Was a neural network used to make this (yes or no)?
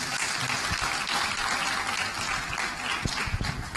no